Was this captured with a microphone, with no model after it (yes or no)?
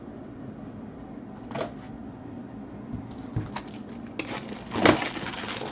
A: yes